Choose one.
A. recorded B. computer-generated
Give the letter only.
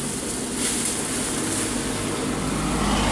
A